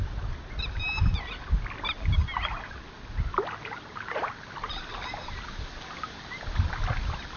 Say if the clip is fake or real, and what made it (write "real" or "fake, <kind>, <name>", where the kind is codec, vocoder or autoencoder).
real